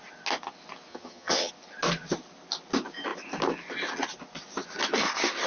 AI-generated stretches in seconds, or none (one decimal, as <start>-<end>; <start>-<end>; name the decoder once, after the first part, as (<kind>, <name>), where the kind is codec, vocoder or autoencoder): 0.9-1.5 (vocoder, HiFi-GAN)